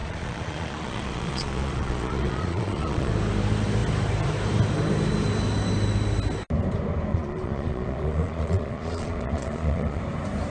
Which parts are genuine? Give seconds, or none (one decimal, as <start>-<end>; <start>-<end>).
3.1-7.1; 10.0-10.5